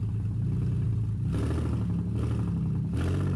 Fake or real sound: real